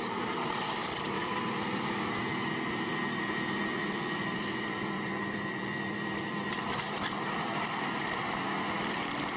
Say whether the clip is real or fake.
fake